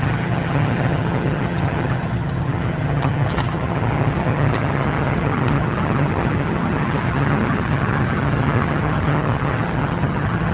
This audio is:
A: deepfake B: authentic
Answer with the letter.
A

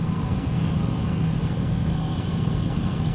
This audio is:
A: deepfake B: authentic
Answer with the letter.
A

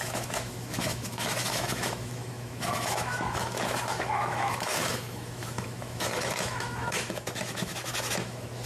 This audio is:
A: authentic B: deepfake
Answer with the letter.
B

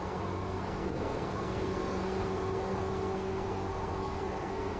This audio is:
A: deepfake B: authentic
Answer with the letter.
A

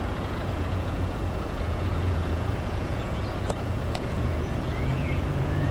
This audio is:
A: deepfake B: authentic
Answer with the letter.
A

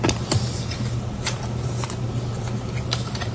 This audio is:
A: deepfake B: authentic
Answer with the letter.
A